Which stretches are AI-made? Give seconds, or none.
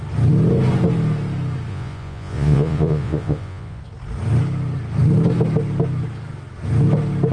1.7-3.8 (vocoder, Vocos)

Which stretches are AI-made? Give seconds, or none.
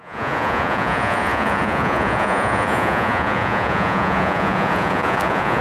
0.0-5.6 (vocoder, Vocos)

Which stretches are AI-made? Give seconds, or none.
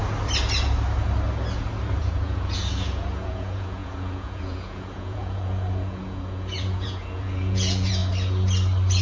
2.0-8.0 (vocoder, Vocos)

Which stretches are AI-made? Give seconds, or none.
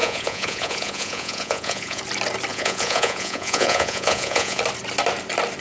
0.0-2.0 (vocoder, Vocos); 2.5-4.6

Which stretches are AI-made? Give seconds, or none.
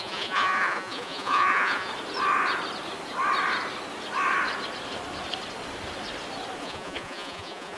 0.0-1.9 (vocoder, Vocos); 6.6-7.8